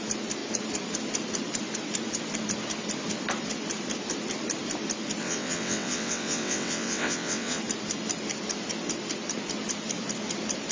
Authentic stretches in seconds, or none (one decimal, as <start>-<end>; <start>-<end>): 0.0-5.2; 7.6-10.7